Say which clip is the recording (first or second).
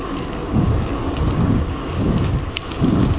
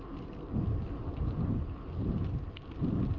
second